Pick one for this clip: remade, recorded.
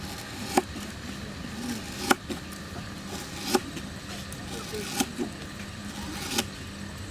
recorded